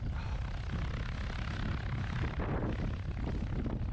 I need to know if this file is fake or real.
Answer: real